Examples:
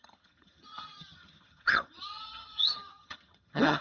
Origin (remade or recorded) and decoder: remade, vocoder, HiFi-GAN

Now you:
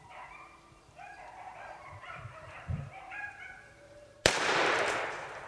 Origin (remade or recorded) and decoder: remade, vocoder, BigVGAN v2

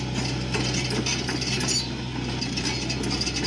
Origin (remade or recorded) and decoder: recorded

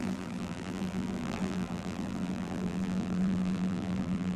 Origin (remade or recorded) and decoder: remade, vocoder, BigVGAN v2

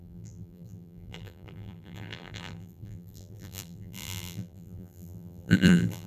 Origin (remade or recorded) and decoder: remade, vocoder, BigVGAN v2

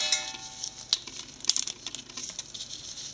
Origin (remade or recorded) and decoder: recorded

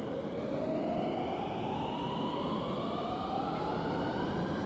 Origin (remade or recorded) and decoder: recorded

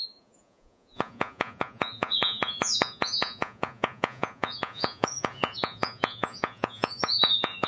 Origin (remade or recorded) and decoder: remade, vocoder, Vocos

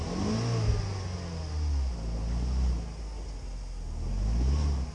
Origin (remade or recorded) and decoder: recorded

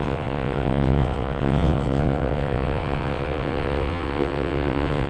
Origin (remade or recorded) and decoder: remade, vocoder, WaveNeXt